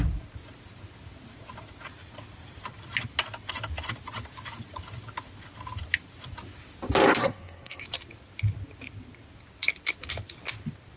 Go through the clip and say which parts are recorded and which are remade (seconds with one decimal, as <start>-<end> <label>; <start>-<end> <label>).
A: 0.0-7.2 recorded; 7.2-7.8 remade; 7.8-11.0 recorded